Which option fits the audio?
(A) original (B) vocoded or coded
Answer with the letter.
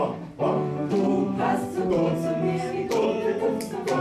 B